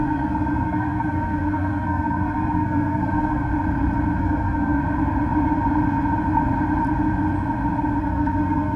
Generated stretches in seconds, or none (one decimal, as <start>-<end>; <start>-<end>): 0.0-3.5; 4.2-4.8; 8.0-8.8

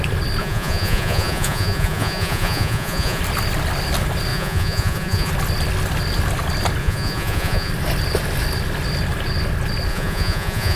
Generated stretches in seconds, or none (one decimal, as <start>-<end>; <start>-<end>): 0.4-3.2; 4.3-5.3; 6.8-7.7; 9.9-10.8

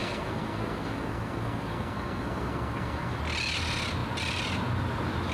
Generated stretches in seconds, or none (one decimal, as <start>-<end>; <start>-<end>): 0.0-3.2

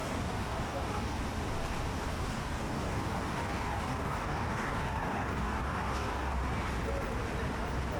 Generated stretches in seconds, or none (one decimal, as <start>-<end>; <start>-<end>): 0.0-1.2; 2.1-6.4

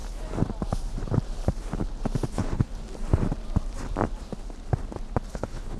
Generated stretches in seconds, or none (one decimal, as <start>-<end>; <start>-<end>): 2.3-2.7; 5.3-5.8

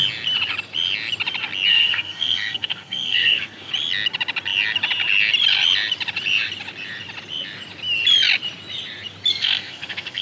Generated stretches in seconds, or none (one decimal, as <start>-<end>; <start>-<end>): 1.7-3.7; 9.3-10.2

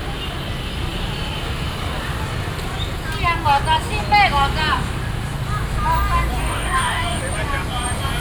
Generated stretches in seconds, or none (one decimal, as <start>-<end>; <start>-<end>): 6.4-7.2